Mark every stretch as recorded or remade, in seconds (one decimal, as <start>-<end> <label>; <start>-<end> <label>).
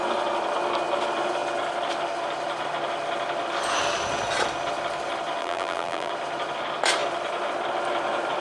0.0-5.4 recorded; 5.4-6.1 remade; 6.1-8.4 recorded